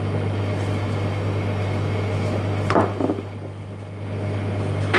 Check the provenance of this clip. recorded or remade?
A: recorded